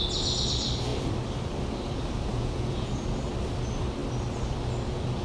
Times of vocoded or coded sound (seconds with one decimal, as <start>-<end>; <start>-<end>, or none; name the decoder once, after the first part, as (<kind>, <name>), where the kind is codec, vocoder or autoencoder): 2.3-2.9 (vocoder, Vocos)